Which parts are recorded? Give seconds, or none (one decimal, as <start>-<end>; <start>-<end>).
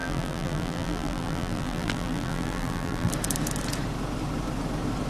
3.1-5.1